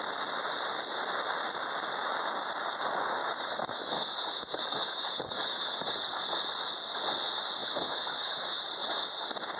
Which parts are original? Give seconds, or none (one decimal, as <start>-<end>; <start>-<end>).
0.0-2.0; 2.7-3.2; 5.9-7.6; 8.6-9.6

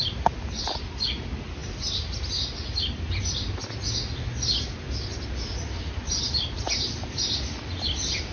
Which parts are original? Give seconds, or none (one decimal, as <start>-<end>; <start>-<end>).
0.0-8.3